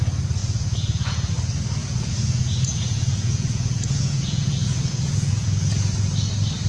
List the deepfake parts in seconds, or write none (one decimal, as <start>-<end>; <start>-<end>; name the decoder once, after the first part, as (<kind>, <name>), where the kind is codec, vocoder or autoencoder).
0.4-1.3 (vocoder, Vocos); 1.8-5.8